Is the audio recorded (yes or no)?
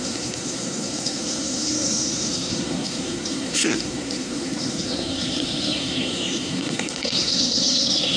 no